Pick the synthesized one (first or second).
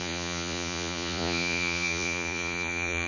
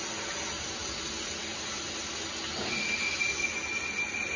first